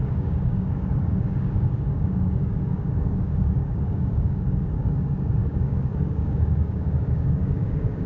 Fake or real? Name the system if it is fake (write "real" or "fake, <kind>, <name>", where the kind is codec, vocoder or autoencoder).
fake, codec, DAC